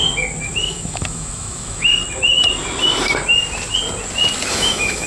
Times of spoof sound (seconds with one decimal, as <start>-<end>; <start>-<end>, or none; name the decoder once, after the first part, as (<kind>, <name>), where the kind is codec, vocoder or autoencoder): 0.6-1.9 (autoencoder, DAC-VAE); 4.5-5.1